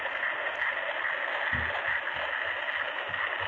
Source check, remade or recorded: recorded